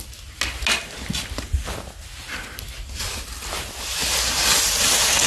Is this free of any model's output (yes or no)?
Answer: yes